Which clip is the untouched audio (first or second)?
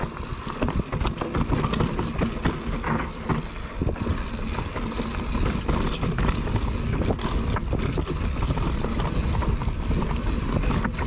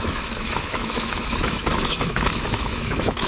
first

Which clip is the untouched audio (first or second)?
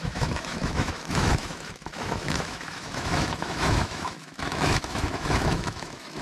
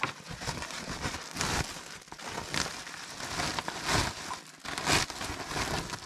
second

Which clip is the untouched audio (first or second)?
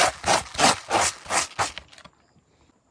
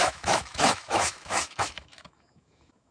first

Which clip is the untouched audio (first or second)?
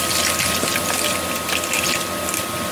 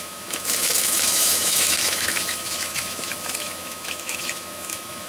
first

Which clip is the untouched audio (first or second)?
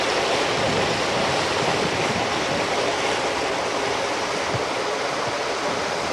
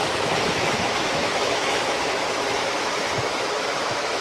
first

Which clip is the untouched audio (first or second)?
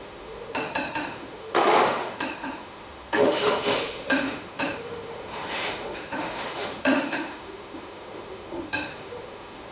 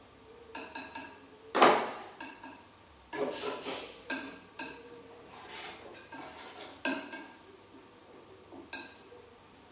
second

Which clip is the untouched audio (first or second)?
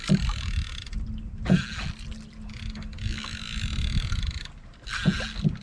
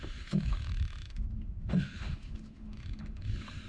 first